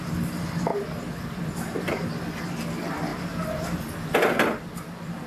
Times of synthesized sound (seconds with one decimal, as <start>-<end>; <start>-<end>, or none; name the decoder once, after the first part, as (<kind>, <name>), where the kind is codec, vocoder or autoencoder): 0.7-1.9 (vocoder, BigVGAN v2); 3.1-3.8